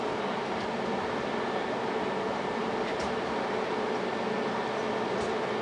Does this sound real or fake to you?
real